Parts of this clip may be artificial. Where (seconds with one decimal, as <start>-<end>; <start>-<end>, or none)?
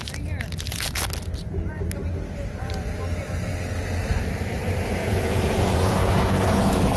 5.0-7.0